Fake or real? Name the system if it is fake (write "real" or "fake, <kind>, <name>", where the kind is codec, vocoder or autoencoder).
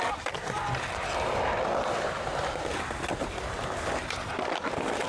real